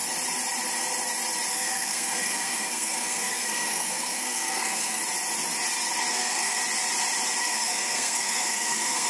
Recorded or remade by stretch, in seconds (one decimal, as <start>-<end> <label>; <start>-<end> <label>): 0.0-1.5 recorded; 1.5-5.0 remade; 5.0-6.1 recorded; 6.1-6.6 remade; 6.6-7.4 recorded; 7.4-9.1 remade